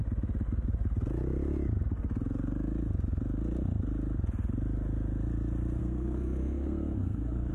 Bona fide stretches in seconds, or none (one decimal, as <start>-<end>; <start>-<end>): 0.0-5.8

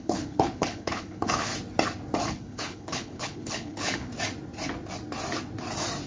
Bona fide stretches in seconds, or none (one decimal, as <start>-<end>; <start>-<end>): 1.5-2.2; 4.1-6.1

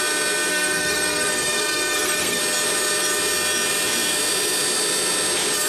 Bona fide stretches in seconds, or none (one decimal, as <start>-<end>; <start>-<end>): 0.0-0.5; 2.4-5.7